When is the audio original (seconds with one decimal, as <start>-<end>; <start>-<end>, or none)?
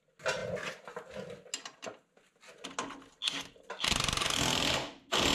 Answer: 0.0-5.3